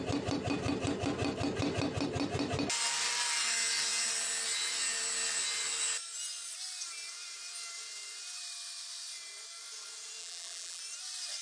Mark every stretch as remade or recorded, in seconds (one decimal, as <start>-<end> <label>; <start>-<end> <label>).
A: 0.0-10.2 recorded; 10.2-10.8 remade; 10.8-11.4 recorded